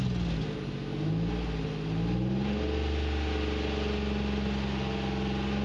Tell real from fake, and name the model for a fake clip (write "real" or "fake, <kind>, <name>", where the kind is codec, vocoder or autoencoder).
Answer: real